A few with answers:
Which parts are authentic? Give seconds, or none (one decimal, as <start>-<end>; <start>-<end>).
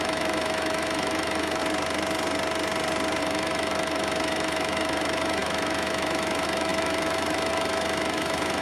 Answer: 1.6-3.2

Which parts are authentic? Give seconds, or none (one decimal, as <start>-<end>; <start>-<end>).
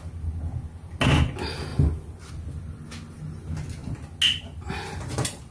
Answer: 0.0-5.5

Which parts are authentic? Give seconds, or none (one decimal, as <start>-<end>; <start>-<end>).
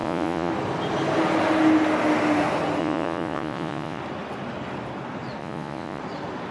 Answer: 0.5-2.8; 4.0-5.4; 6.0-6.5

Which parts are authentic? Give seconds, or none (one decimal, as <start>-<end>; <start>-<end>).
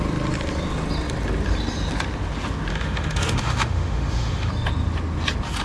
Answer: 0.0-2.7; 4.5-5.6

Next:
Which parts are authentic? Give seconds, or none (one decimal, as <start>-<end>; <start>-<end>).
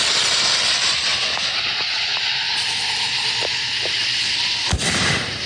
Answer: 0.0-5.5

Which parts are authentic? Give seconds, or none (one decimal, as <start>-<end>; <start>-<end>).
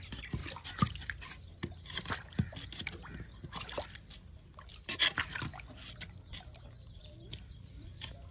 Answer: 0.4-3.8; 6.5-7.0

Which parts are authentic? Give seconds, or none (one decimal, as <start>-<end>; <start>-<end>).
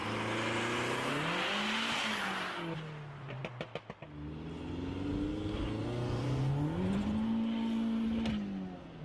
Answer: 0.0-9.0